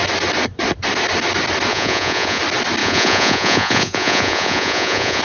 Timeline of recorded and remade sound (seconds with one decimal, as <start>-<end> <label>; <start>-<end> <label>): 0.0-1.7 recorded; 1.7-2.4 remade; 2.4-2.8 recorded; 2.8-5.2 remade